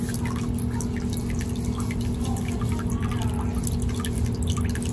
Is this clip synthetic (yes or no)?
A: no